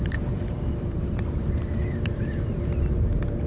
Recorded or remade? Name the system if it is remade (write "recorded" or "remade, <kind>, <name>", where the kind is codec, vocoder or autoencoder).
remade, vocoder, BigVGAN v2